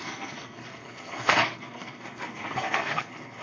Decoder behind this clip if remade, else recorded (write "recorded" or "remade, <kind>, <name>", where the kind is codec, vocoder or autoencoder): remade, codec, SNAC